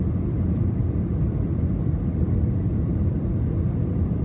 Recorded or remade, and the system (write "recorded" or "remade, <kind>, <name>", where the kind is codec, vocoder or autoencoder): recorded